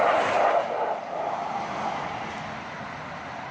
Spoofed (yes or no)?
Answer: no